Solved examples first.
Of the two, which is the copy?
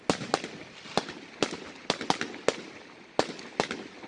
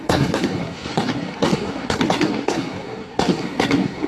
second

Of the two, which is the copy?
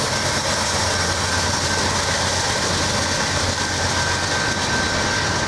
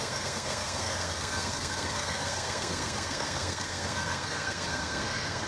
second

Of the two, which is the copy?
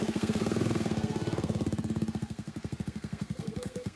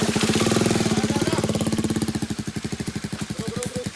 first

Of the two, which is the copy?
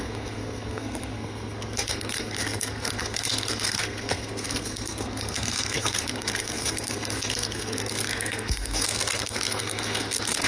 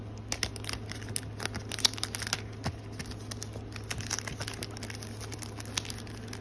first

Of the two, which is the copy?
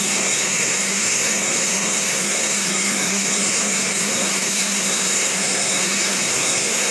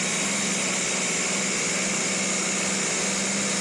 first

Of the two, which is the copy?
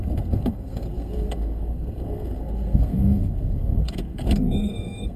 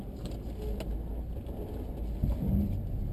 first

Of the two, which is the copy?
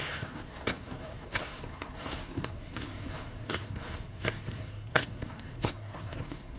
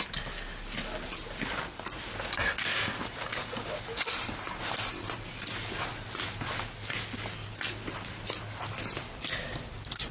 first